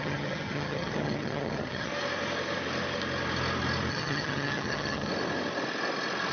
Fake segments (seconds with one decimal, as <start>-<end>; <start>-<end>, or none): 0.0-1.9; 3.9-5.1